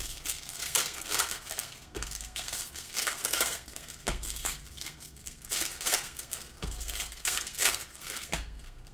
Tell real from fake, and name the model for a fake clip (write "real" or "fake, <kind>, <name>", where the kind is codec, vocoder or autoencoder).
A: fake, codec, SNAC